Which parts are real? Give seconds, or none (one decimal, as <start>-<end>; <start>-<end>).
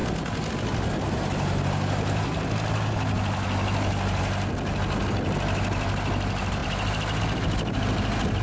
0.0-8.4